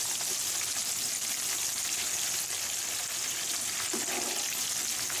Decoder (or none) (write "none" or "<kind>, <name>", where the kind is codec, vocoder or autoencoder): none